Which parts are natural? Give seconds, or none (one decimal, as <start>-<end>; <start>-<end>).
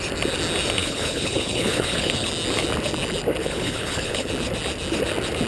0.0-0.8; 2.3-3.4; 4.3-5.5